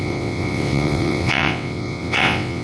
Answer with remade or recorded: remade